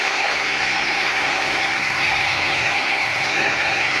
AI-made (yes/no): yes